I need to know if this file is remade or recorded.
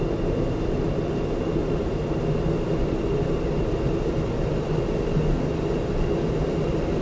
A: recorded